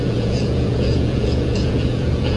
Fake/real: fake